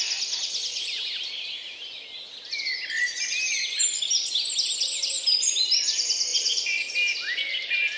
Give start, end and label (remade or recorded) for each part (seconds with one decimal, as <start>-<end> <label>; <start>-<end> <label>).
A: 0.0-6.3 recorded; 6.3-6.9 remade; 6.9-8.0 recorded

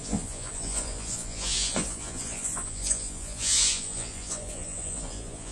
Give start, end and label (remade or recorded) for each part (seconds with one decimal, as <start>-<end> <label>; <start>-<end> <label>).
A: 0.0-5.5 remade

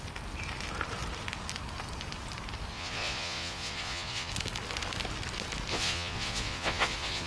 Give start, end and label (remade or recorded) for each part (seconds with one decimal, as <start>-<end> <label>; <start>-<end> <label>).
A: 0.0-2.7 recorded; 2.7-4.3 remade; 4.3-5.7 recorded; 5.7-7.3 remade

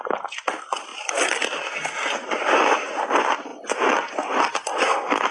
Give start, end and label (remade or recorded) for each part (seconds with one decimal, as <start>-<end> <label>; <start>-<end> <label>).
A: 0.0-5.3 recorded

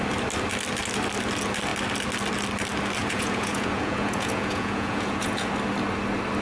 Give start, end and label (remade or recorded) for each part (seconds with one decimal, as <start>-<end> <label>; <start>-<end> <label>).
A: 0.0-3.0 recorded; 3.0-5.5 remade; 5.5-6.4 recorded

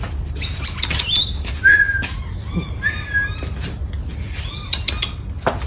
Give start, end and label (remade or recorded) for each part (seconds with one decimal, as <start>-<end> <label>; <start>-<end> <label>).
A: 0.0-5.7 recorded